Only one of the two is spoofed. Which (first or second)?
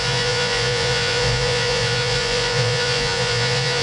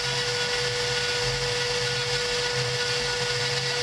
first